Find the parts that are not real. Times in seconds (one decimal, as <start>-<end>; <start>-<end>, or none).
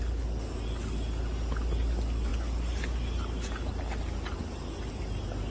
none